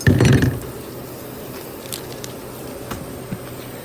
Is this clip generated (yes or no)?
no